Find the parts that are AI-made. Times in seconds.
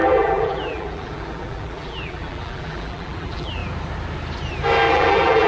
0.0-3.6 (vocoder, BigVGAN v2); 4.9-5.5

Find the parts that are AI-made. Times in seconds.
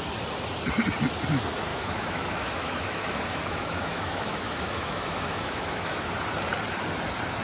1.7-6.1 (autoencoder, DAC-VAE)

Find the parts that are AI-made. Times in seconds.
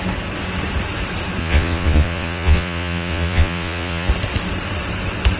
1.4-4.1 (vocoder, Vocos)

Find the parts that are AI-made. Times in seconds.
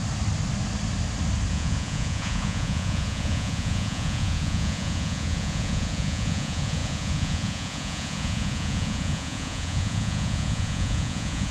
1.5-11.5 (vocoder, Vocos)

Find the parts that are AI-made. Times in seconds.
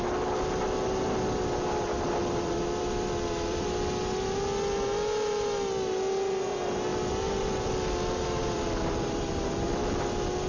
2.2-4.1 (vocoder, BigVGAN v2); 6.9-9.5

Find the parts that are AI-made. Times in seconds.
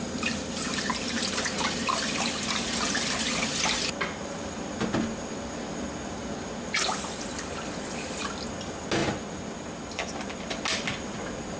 none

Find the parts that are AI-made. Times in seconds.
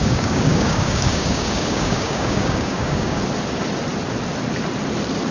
0.0-3.2 (codec, DAC)